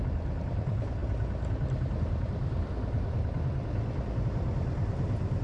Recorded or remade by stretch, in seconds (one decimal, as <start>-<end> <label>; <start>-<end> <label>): 0.0-5.4 recorded